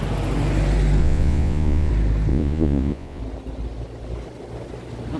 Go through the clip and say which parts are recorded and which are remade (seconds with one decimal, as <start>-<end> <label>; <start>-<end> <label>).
0.0-1.0 recorded; 1.0-1.9 remade; 1.9-2.3 recorded; 2.3-3.2 remade; 3.2-5.2 recorded